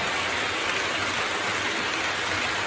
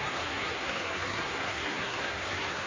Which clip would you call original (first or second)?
first